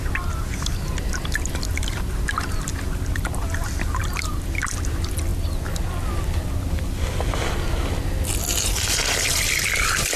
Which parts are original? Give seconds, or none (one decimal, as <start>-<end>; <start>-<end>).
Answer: 0.0-10.2